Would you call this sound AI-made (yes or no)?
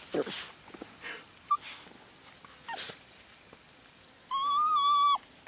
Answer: no